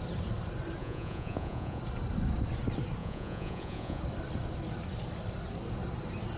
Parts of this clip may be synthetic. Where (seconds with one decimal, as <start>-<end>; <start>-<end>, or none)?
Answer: 0.8-1.8; 3.0-4.0